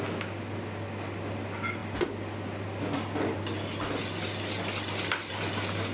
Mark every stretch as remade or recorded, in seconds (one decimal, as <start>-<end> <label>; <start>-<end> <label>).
0.0-5.9 recorded